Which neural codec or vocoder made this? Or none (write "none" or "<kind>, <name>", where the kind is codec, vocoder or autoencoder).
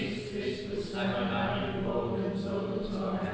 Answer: none